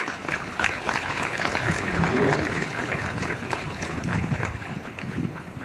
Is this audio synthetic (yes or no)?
yes